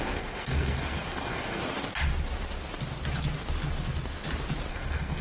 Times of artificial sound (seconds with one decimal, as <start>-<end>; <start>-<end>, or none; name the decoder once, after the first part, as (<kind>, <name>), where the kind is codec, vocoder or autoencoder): 0.0-1.6 (codec, SNAC); 4.7-5.2